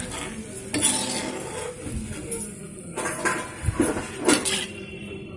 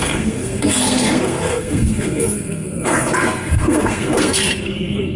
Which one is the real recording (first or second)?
first